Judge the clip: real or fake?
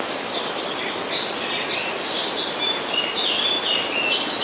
real